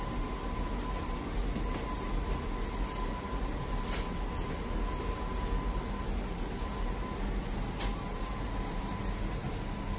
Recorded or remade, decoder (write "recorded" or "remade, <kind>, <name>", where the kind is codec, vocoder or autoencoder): recorded